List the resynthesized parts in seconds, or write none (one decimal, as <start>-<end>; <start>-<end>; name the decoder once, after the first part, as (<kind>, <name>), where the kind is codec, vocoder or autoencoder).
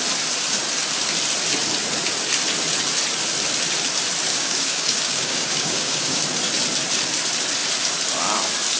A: 4.3-6.2 (codec, DAC)